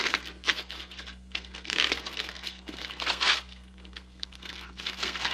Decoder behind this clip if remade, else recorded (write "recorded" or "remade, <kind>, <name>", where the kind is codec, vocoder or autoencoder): remade, codec, SNAC